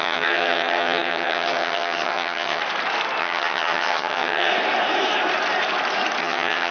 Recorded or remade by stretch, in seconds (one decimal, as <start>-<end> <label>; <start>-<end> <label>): 0.0-2.6 remade; 2.6-3.2 recorded; 3.2-4.5 remade; 4.5-6.2 recorded; 6.2-6.7 remade